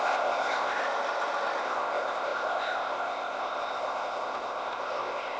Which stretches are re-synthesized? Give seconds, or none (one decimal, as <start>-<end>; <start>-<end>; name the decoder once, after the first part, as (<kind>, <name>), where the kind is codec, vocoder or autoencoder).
0.0-0.8 (codec, ZipCodec); 1.6-5.4